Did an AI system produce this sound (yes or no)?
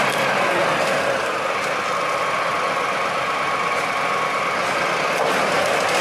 no